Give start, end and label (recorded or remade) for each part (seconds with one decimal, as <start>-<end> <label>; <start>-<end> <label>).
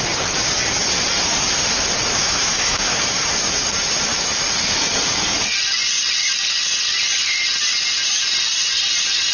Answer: 0.0-2.2 recorded; 2.2-3.0 remade; 3.0-9.3 recorded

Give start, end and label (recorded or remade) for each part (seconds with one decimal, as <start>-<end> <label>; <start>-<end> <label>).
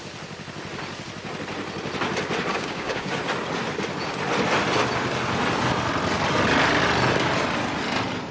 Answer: 0.0-2.5 recorded; 2.5-3.2 remade; 3.2-8.3 recorded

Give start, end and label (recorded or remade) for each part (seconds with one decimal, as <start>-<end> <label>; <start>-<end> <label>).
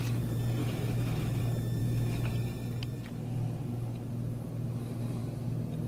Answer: 0.0-0.6 recorded; 0.6-1.4 remade; 1.4-1.8 recorded; 1.8-2.3 remade; 2.3-5.9 recorded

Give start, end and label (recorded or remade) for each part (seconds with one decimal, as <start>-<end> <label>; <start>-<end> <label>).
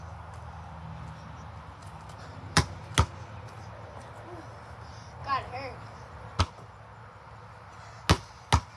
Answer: 0.0-2.3 recorded; 2.3-2.8 remade; 2.8-8.8 recorded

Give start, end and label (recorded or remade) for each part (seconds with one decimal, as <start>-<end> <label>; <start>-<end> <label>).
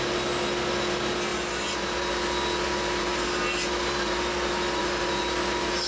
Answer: 0.0-5.9 recorded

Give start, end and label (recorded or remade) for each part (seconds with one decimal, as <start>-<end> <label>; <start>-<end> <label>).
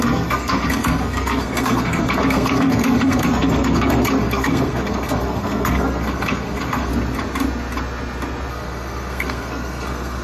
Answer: 0.0-6.9 remade; 6.9-8.5 recorded; 8.5-10.2 remade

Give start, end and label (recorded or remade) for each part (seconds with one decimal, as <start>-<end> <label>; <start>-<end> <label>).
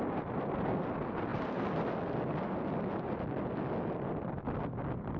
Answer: 0.0-5.2 recorded